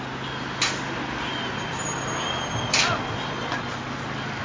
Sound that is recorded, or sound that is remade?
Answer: recorded